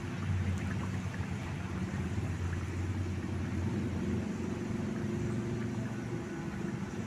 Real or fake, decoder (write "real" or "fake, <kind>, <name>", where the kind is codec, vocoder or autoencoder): real